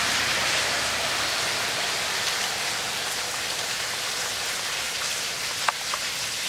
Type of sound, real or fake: fake